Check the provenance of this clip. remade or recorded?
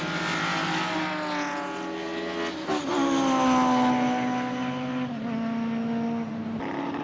recorded